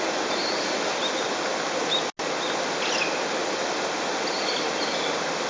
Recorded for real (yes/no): yes